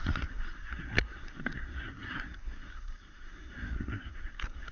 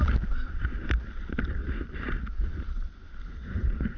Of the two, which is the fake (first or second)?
first